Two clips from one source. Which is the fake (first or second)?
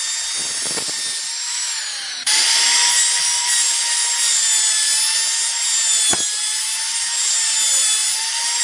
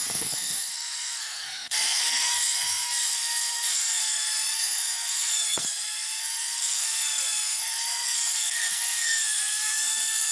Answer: second